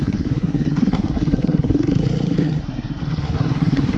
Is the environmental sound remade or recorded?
remade